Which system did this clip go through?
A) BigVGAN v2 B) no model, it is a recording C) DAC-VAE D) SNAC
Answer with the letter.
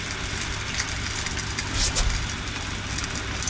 B